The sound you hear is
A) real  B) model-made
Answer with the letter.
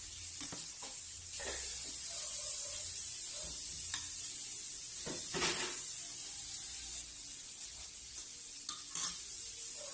A